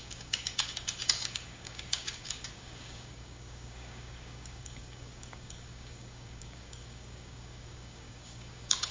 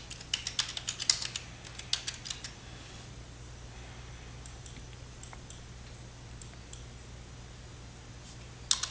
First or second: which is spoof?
first